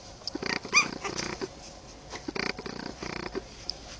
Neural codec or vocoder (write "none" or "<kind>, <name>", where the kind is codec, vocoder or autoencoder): none